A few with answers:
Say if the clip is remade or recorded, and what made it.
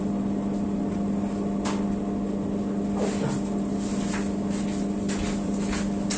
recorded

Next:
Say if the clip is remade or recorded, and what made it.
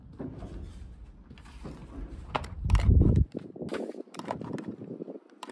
recorded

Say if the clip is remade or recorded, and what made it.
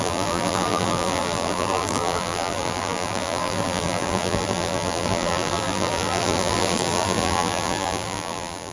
remade, vocoder, BigVGAN v2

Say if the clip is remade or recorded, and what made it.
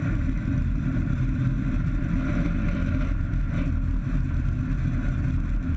remade, vocoder, BigVGAN v2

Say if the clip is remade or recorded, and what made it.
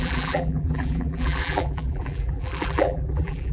remade, vocoder, BigVGAN v2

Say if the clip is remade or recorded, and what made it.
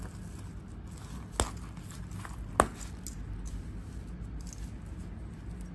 recorded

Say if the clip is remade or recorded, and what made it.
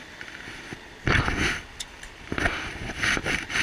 remade, vocoder, BigVGAN v2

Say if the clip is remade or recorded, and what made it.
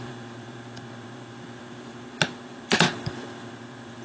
remade, vocoder, BigVGAN v2